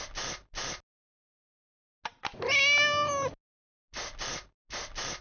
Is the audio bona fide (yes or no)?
yes